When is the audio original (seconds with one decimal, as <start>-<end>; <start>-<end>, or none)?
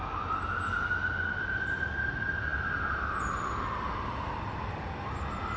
0.0-5.6